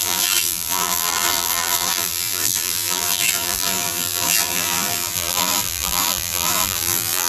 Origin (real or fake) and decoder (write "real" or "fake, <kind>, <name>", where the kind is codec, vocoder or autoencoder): fake, vocoder, BigVGAN v2